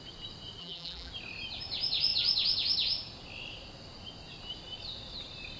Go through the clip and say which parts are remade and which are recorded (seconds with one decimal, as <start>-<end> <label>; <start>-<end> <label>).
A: 0.0-0.6 recorded; 0.6-1.1 remade; 1.1-5.6 recorded